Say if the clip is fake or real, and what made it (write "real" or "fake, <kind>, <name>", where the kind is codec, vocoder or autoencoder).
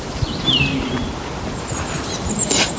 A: real